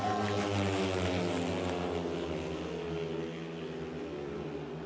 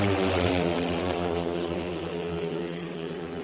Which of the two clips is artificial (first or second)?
second